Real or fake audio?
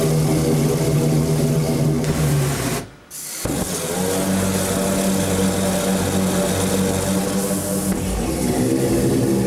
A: real